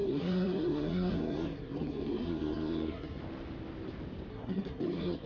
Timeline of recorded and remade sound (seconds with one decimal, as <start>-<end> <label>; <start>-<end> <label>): 0.0-3.2 remade; 3.2-4.3 recorded; 4.3-5.3 remade